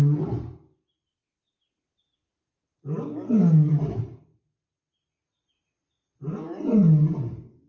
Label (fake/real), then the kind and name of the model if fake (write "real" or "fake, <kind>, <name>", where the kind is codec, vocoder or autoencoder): real